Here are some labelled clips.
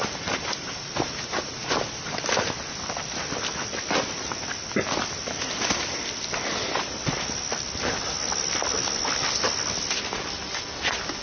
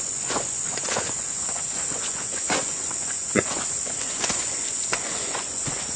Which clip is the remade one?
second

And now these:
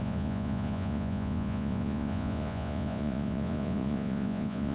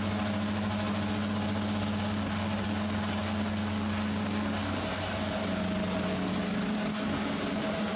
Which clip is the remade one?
first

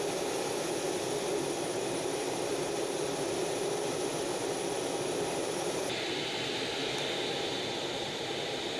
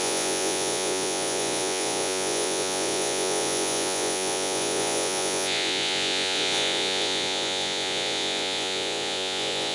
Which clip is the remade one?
second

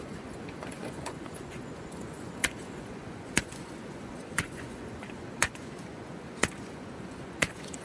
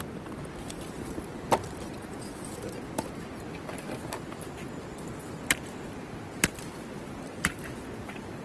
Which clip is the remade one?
first